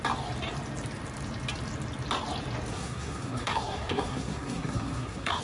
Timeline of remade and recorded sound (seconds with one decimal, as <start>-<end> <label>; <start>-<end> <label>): 0.0-2.7 recorded; 2.7-5.4 remade